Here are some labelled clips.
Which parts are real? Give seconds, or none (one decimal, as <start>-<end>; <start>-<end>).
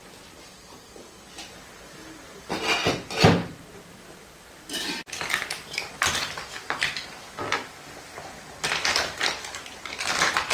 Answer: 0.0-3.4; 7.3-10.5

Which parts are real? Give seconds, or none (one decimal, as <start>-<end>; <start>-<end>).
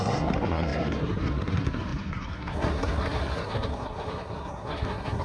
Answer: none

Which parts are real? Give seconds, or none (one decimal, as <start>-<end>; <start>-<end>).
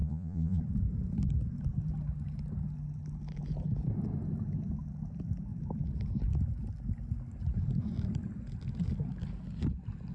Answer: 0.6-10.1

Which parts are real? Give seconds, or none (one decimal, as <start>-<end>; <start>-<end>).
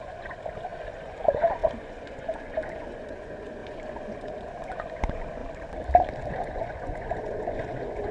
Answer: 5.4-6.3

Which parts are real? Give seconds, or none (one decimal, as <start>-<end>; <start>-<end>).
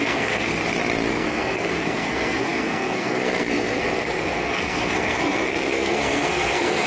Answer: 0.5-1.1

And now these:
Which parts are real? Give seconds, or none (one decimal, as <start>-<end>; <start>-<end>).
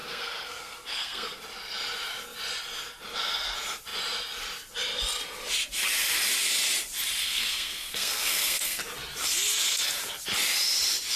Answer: 1.4-7.2; 8.8-11.2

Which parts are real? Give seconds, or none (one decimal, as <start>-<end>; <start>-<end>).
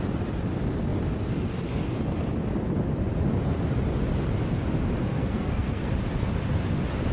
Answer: 0.0-5.0; 5.9-7.1